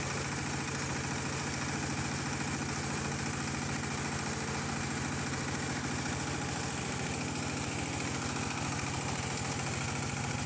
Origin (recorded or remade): recorded